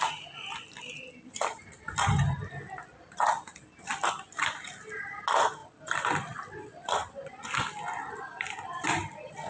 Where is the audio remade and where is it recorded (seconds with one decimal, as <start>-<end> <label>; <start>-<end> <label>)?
0.0-9.5 recorded